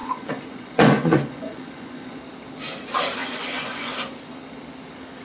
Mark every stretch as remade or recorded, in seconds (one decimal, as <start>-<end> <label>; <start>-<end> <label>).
0.0-2.2 remade; 2.2-3.2 recorded; 3.2-3.9 remade; 3.9-5.2 recorded